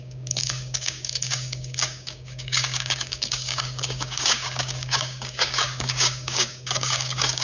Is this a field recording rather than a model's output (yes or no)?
no